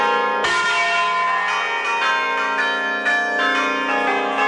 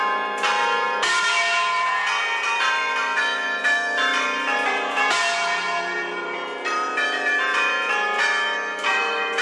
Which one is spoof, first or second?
second